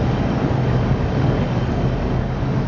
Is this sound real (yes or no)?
no